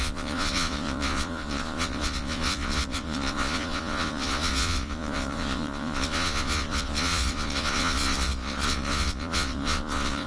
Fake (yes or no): yes